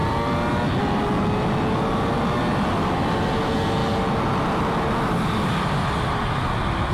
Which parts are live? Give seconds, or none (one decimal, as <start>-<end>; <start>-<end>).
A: 0.0-6.9